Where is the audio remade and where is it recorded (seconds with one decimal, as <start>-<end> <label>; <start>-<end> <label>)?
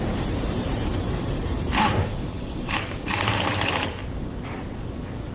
0.0-4.0 remade; 4.0-5.3 recorded